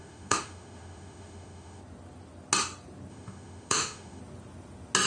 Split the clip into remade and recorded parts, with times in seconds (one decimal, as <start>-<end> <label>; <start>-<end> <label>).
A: 0.0-1.8 remade; 1.8-3.1 recorded; 3.1-4.2 remade; 4.2-5.1 recorded